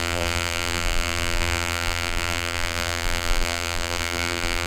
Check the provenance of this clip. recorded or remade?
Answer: remade